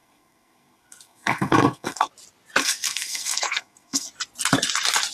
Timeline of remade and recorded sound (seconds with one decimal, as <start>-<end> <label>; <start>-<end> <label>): 0.0-2.1 remade; 2.1-2.6 recorded; 2.6-4.1 remade; 4.1-5.1 recorded